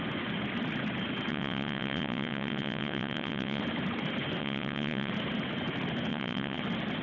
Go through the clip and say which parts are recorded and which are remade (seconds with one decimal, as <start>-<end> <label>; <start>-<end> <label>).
0.0-1.3 recorded; 1.3-3.6 remade; 3.6-4.4 recorded; 4.4-5.1 remade; 5.1-6.1 recorded; 6.1-6.6 remade; 6.6-7.0 recorded